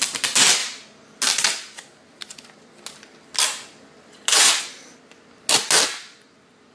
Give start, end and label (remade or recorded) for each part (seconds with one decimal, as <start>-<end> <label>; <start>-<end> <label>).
0.0-6.7 recorded